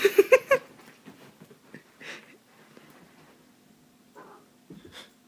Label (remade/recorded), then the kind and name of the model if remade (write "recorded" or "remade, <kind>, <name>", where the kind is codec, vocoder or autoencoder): recorded